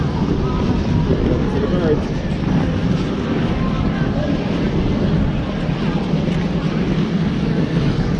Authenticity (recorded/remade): recorded